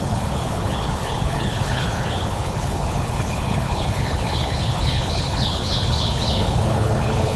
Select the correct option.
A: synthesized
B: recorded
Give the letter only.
A